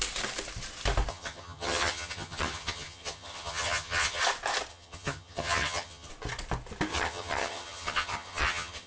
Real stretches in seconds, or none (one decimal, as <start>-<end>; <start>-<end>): 0.0-1.1; 4.2-4.7; 6.1-6.9